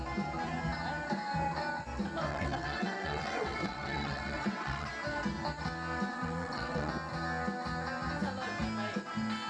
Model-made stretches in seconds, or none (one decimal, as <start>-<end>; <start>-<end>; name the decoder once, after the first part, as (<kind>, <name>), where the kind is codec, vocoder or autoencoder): 2.3-4.9 (vocoder, WaveNeXt); 6.1-6.9